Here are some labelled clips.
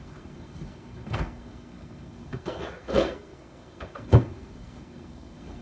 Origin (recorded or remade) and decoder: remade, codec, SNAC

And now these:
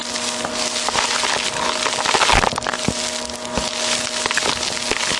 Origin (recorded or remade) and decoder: recorded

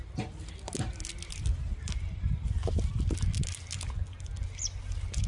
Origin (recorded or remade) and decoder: recorded